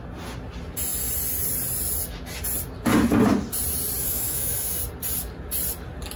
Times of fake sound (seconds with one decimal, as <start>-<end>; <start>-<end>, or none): 4.0-4.8